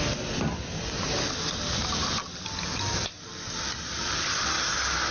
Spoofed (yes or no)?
no